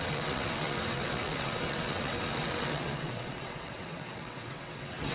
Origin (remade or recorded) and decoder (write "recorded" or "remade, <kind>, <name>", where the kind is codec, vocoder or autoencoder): remade, vocoder, WaveNeXt